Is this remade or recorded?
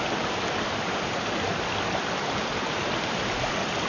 recorded